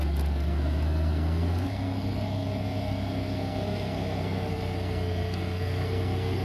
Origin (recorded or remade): remade